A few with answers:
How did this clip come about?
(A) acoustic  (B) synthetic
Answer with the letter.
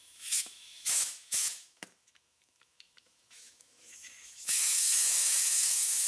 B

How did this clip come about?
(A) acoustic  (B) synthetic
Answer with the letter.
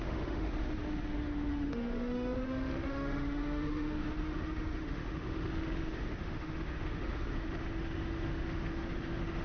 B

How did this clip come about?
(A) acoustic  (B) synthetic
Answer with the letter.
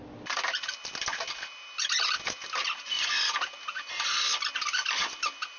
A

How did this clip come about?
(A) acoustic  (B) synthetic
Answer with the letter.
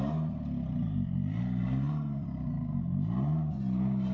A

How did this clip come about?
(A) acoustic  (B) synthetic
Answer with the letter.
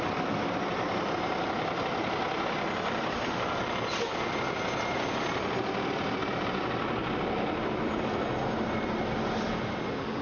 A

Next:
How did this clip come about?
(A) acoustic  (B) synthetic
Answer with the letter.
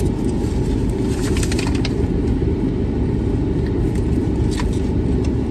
A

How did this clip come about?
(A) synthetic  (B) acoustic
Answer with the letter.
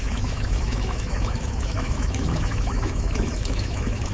A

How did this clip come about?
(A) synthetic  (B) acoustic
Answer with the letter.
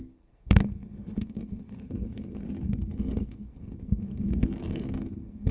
A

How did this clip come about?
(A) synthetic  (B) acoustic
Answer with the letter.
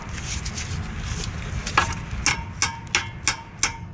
B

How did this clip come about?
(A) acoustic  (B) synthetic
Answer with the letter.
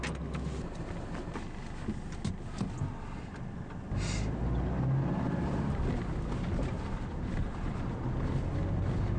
A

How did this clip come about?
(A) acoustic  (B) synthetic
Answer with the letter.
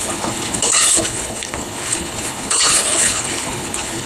B